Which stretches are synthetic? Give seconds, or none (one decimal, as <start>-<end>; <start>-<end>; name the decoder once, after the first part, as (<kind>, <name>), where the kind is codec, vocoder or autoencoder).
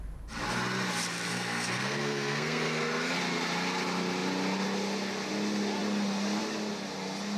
1.3-3.2 (codec, SNAC)